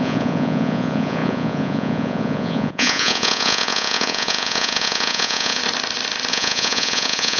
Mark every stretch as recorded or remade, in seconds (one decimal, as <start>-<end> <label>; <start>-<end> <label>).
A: 0.0-5.6 remade; 5.6-6.3 recorded; 6.3-7.4 remade